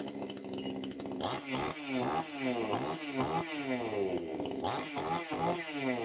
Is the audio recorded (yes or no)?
yes